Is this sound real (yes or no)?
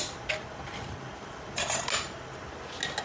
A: yes